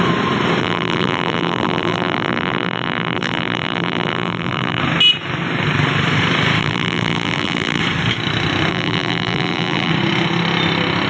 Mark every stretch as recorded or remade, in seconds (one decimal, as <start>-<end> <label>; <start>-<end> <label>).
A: 0.0-0.6 recorded; 0.6-4.8 remade; 4.8-6.6 recorded; 6.6-7.8 remade; 7.8-8.7 recorded; 8.7-9.9 remade; 9.9-11.1 recorded